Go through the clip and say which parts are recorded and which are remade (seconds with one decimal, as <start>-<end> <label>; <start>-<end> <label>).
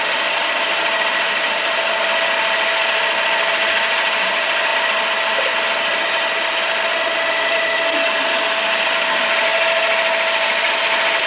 0.0-11.3 recorded